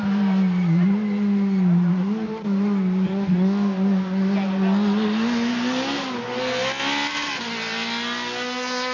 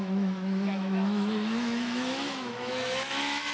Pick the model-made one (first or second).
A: second